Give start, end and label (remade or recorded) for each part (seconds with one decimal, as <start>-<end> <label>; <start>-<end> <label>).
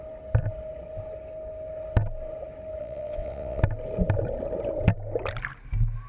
0.0-2.8 recorded; 2.8-3.6 remade; 3.6-6.1 recorded